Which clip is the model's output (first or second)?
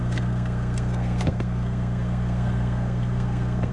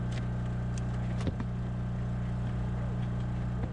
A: first